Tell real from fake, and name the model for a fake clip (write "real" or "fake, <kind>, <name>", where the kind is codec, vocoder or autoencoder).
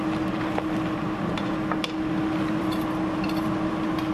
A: real